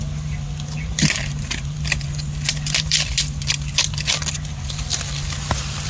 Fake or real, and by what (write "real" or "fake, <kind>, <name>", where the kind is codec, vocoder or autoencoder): real